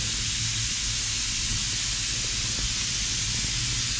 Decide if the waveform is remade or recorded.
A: recorded